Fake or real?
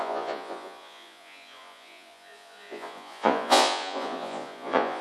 fake